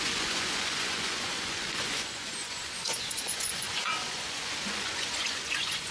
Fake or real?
fake